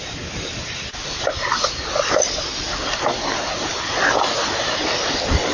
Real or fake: real